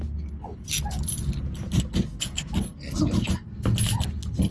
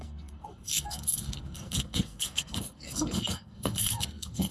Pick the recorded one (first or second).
first